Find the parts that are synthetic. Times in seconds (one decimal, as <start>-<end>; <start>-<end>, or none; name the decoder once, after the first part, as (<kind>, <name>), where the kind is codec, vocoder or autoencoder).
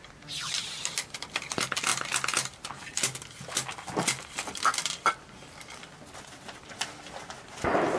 none